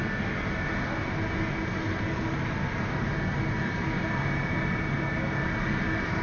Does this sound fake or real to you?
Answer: real